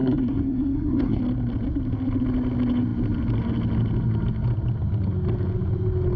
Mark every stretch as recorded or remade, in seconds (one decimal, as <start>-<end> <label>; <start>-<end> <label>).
0.0-1.2 remade; 1.2-6.2 recorded